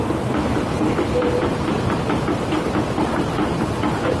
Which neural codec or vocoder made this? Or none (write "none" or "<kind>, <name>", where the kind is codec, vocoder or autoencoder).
vocoder, BigVGAN v2